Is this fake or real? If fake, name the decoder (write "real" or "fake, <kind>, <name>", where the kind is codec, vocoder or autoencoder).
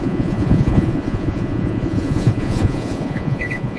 fake, vocoder, Vocos